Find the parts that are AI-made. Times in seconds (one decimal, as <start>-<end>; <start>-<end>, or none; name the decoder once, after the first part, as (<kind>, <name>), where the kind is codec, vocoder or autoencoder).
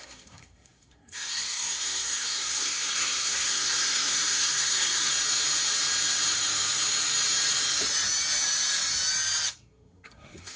0.0-5.1 (codec, SNAC); 9.5-10.6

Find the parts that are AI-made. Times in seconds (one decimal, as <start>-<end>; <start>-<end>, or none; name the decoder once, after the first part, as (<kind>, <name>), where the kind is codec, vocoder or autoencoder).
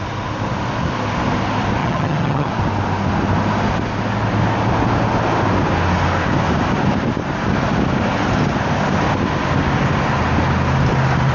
1.8-2.5 (vocoder, HiFi-GAN)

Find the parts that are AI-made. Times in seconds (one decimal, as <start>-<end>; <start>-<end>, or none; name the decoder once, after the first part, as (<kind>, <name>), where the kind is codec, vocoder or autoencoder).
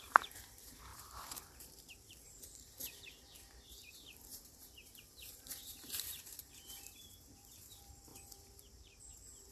0.0-9.5 (vocoder, BigVGAN v2)